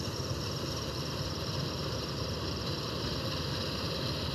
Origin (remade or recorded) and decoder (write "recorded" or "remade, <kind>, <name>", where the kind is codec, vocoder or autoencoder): remade, vocoder, BigVGAN v2